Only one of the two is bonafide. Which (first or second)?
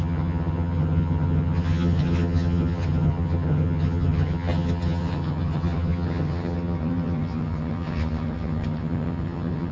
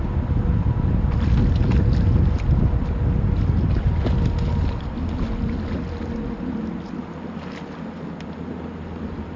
second